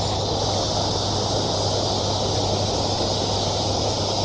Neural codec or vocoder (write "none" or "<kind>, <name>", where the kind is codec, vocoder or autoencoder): none